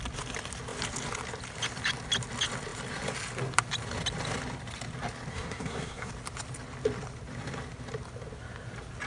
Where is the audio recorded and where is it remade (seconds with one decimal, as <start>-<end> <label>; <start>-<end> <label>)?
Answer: 0.0-5.3 recorded; 5.3-6.1 remade; 6.1-9.1 recorded

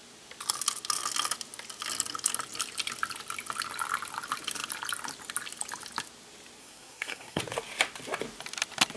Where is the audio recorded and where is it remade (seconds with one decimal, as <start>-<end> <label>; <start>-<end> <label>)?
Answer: 0.0-6.6 recorded; 6.6-7.4 remade; 7.4-9.0 recorded

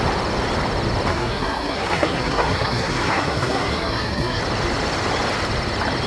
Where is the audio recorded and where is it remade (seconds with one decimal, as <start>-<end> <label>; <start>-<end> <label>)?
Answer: 0.0-1.1 recorded; 1.1-4.4 remade; 4.4-6.1 recorded

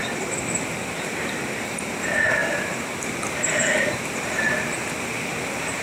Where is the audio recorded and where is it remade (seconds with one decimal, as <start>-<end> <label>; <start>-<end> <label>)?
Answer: 0.0-1.4 remade; 1.4-5.8 recorded

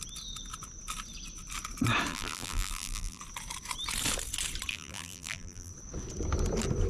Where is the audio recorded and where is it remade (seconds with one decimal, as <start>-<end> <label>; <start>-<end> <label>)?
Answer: 0.0-2.1 recorded; 2.1-3.2 remade; 3.2-4.7 recorded; 4.7-5.7 remade; 5.7-6.9 recorded

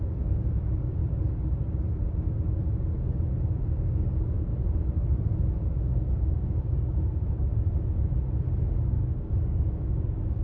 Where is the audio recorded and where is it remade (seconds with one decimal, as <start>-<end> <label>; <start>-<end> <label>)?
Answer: 0.0-1.0 remade; 1.0-3.7 recorded; 3.7-4.5 remade; 4.5-6.0 recorded; 6.0-7.5 remade; 7.5-8.8 recorded; 8.8-10.4 remade